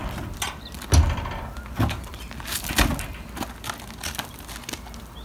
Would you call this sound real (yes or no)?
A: yes